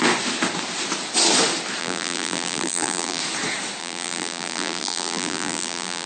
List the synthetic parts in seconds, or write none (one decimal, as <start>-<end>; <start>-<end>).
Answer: 1.8-3.2; 3.8-6.1